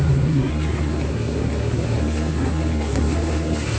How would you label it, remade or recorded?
remade